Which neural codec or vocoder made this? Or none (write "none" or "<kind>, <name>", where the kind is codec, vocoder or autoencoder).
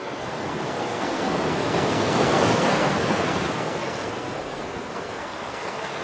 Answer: codec, SNAC